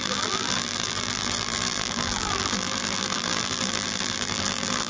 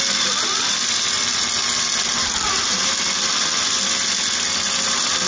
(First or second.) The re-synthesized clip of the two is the first